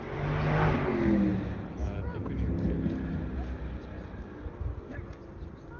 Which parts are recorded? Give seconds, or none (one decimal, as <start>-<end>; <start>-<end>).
0.0-5.8

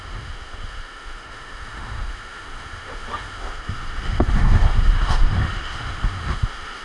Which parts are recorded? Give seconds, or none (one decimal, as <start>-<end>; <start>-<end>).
none

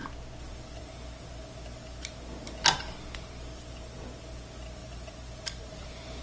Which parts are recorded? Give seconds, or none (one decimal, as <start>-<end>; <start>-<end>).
0.0-4.8

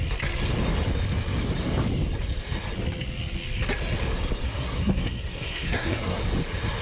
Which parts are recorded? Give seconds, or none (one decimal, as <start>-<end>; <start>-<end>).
0.0-4.4; 6.2-6.8